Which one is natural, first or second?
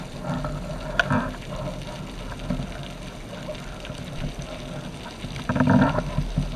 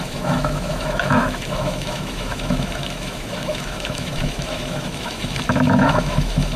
first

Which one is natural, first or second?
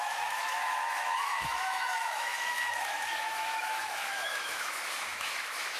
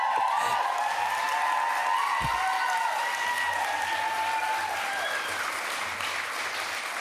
second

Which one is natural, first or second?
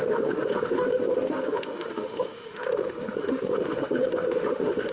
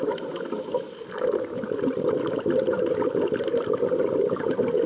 second